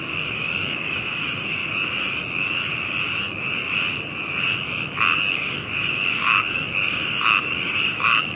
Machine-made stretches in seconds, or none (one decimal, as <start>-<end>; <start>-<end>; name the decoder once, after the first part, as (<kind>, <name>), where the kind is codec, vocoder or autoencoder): 0.0-1.6 (codec, DAC); 5.2-8.4